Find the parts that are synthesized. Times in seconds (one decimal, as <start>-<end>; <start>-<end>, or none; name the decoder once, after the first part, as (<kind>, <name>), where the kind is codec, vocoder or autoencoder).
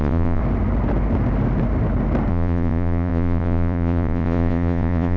0.0-0.4 (vocoder, Vocos); 2.3-5.2